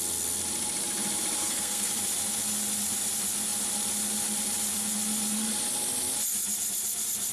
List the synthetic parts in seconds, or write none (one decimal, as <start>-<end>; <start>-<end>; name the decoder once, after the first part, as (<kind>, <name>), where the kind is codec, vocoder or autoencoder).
1.4-1.9 (codec, SNAC)